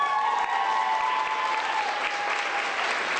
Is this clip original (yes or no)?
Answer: yes